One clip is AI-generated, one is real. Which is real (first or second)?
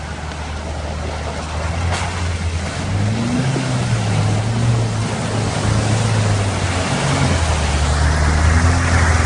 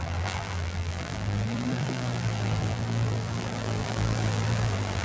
first